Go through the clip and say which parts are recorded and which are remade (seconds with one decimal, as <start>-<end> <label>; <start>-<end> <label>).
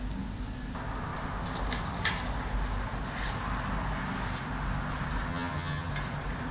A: 0.0-5.3 recorded; 5.3-5.9 remade; 5.9-6.5 recorded